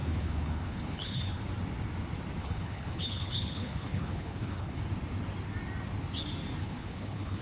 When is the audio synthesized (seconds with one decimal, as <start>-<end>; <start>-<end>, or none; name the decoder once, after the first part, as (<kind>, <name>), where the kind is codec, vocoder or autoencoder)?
0.0-1.4 (codec, HILCodec); 2.4-4.8; 6.6-7.4